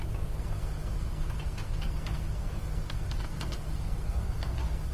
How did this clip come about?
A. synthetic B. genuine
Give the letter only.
A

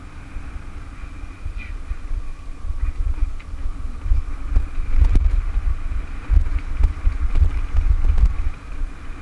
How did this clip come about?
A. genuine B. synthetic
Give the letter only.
A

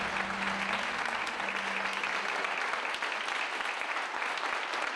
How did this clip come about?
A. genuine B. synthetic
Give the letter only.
A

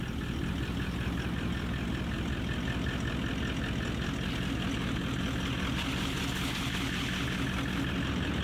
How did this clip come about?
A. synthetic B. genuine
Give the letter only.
B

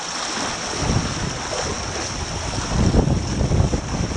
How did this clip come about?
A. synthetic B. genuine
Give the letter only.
B